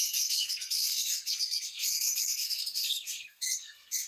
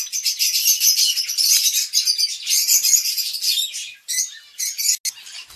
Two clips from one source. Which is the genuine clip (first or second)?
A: second